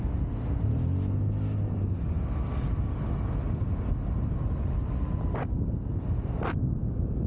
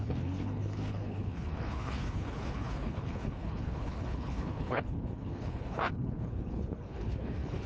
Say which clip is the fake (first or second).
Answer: second